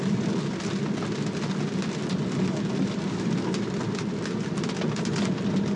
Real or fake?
real